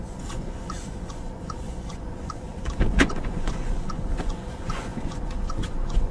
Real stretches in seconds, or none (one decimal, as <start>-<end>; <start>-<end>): none